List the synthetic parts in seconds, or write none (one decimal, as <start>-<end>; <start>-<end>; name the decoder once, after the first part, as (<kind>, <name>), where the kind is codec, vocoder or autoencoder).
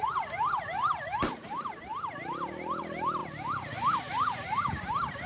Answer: 0.0-1.9 (vocoder, BigVGAN v2); 2.8-3.2; 4.1-5.3